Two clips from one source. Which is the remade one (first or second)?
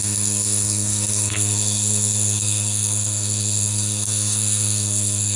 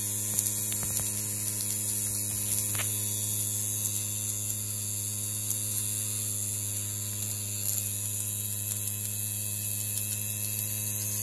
first